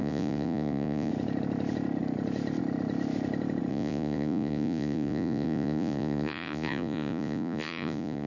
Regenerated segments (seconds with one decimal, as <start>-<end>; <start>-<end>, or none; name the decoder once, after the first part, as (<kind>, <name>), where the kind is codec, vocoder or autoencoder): 0.0-1.1 (vocoder, Vocos); 3.7-8.3